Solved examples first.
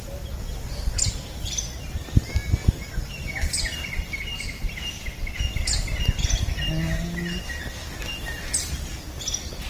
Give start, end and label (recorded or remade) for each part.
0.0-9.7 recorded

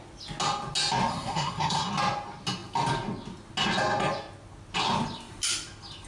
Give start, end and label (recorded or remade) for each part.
0.0-1.1 recorded; 1.1-1.9 remade; 1.9-6.1 recorded

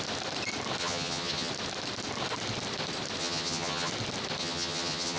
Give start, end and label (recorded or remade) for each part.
0.0-0.8 recorded; 0.8-1.5 remade; 1.5-3.2 recorded; 3.2-3.9 remade; 3.9-4.4 recorded; 4.4-5.2 remade

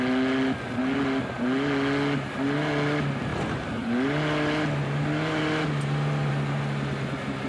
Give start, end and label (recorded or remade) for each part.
0.0-7.5 recorded

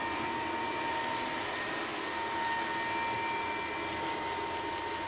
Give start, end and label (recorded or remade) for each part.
0.0-5.1 recorded

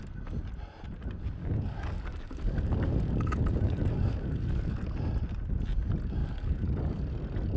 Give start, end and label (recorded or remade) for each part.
0.0-1.4 recorded; 1.4-4.9 remade; 4.9-6.2 recorded; 6.2-7.0 remade; 7.0-7.6 recorded